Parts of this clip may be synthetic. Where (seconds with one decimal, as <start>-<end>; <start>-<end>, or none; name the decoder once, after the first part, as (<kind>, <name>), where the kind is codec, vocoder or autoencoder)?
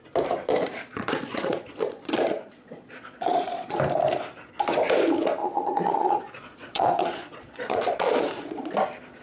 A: 0.6-3.8 (vocoder, Vocos); 5.4-8.7